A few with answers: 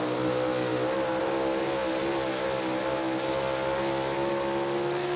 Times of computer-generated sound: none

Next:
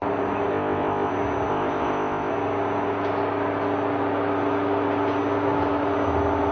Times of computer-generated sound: 0.5-1.1 (codec, ZipCodec); 1.5-2.3